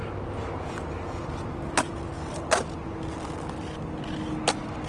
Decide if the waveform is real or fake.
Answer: real